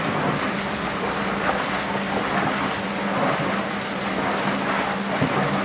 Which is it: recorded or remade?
recorded